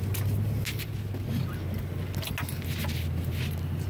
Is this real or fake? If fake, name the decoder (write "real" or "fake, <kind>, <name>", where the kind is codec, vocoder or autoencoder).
real